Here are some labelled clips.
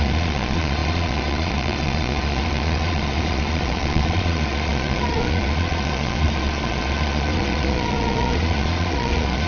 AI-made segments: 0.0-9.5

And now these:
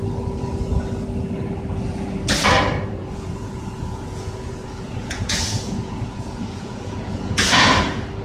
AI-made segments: 3.0-7.7

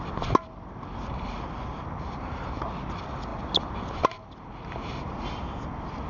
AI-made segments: none

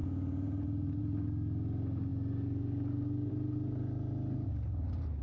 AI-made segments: 0.0-1.0

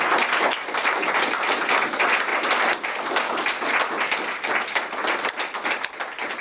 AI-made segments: none

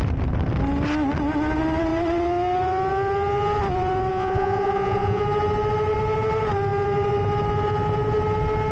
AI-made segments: 4.1-5.2

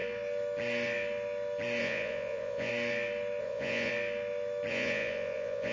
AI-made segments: 1.8-2.7; 3.4-3.9; 4.7-5.7